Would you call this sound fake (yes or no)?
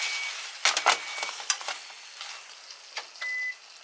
no